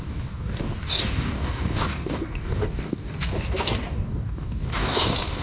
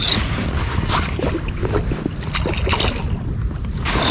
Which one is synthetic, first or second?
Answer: first